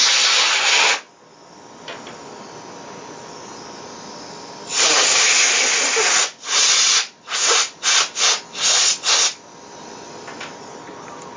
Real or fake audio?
real